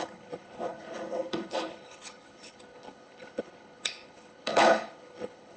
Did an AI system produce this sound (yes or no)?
yes